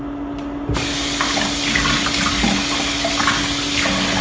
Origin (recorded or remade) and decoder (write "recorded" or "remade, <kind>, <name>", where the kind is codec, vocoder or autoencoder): recorded